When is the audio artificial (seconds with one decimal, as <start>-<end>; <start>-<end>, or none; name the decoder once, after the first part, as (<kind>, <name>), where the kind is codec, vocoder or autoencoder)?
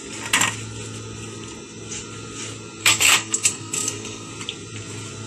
2.8-4.3 (codec, SNAC)